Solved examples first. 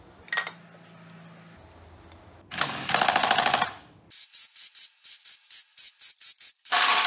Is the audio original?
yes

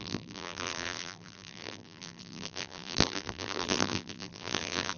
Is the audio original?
no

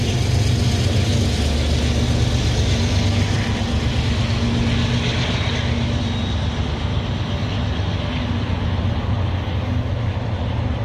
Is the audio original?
yes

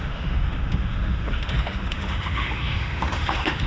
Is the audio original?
no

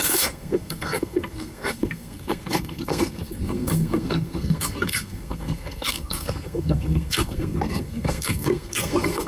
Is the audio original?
no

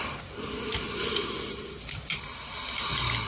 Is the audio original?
yes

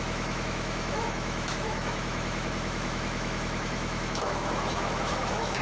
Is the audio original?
no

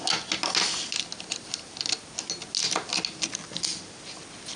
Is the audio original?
yes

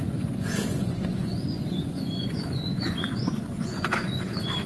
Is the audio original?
no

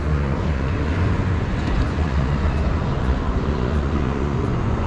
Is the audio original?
no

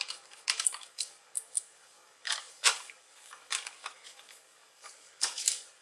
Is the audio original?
no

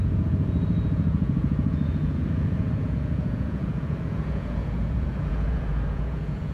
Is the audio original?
no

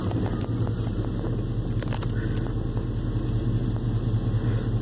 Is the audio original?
yes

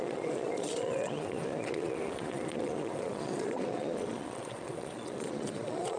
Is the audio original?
no